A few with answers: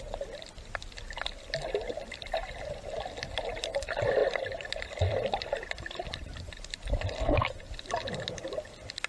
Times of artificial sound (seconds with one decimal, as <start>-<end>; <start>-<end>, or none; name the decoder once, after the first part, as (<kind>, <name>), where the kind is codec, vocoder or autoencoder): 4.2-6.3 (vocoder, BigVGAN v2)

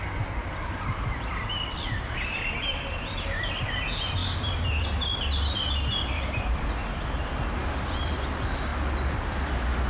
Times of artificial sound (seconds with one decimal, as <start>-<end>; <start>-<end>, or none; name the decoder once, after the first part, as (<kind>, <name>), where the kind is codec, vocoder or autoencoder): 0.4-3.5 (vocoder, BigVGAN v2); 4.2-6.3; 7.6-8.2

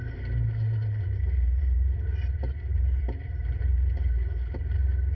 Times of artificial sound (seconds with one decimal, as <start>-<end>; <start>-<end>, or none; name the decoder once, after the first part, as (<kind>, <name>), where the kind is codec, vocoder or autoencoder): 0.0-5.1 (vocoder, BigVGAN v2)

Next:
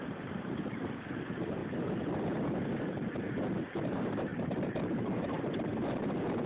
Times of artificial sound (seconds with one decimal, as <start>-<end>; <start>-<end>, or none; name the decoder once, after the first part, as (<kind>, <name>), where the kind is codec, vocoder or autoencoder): 0.0-1.6 (vocoder, BigVGAN v2); 3.8-5.7

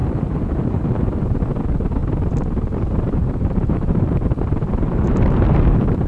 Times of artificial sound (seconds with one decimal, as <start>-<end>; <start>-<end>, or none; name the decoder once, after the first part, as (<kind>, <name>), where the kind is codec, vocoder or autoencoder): 0.0-1.2 (vocoder, BigVGAN v2); 2.0-6.1

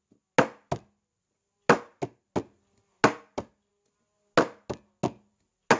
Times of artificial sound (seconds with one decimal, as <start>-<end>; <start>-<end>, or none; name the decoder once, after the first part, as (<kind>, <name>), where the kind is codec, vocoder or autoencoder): none